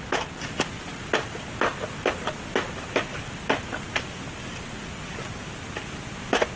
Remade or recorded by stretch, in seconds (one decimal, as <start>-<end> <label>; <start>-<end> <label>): 0.0-6.6 recorded